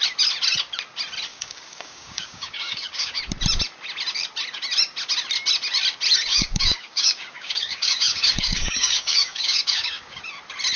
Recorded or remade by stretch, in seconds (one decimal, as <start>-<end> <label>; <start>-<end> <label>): 0.0-1.3 recorded; 1.3-3.2 remade; 3.2-6.3 recorded; 6.3-10.2 remade; 10.2-10.8 recorded